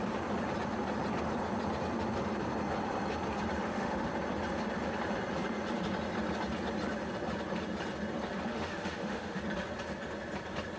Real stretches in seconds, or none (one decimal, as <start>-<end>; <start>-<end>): 0.0-3.6; 4.1-8.5; 9.4-10.8